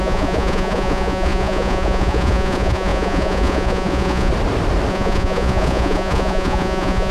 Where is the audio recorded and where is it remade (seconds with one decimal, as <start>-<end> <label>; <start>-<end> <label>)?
0.0-4.3 remade; 4.3-4.9 recorded; 4.9-7.1 remade